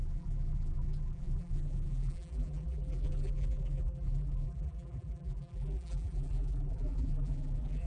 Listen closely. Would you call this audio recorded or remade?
remade